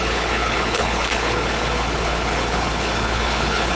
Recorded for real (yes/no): no